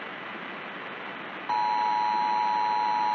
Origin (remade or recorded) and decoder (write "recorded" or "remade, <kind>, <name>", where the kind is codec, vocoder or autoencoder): recorded